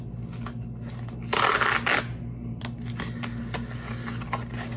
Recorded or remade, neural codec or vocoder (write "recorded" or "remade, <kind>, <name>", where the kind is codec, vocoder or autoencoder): recorded